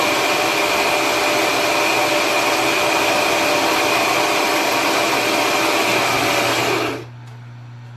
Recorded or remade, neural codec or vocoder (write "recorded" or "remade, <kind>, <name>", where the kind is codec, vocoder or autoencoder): recorded